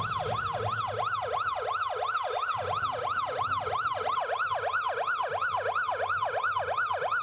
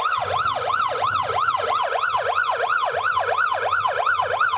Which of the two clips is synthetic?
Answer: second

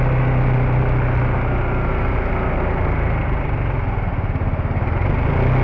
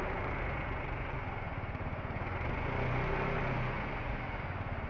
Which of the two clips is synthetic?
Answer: second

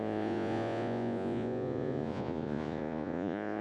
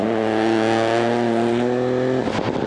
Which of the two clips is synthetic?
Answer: first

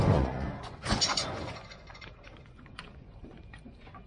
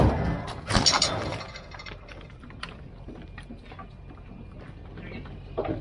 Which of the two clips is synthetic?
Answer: first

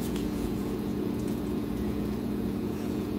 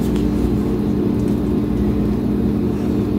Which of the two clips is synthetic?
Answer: first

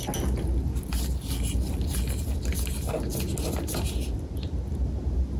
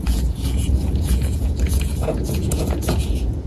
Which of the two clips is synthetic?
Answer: second